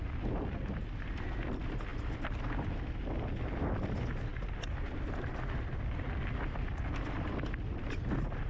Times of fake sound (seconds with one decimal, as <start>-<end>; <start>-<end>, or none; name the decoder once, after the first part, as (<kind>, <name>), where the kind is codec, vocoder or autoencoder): none